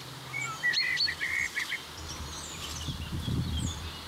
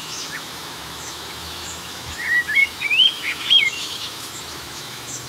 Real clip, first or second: first